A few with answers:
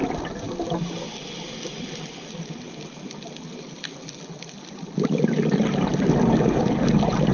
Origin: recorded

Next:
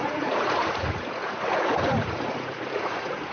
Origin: remade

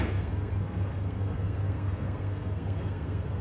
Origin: remade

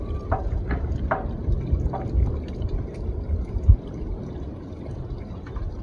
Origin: remade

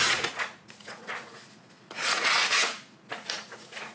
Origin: remade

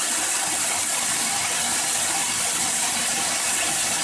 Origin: recorded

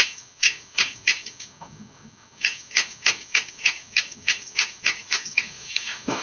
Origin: remade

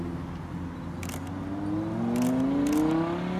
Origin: recorded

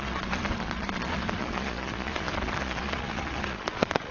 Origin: remade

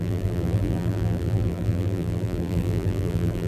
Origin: remade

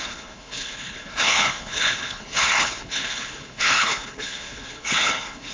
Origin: remade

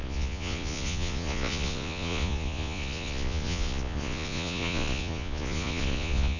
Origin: remade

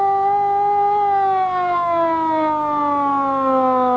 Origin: recorded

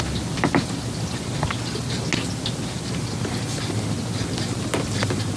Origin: recorded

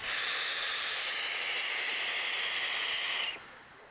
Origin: recorded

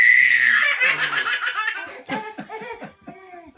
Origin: recorded